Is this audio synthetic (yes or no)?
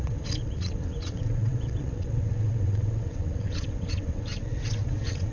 yes